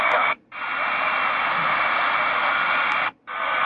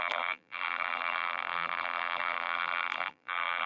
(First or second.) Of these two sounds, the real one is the first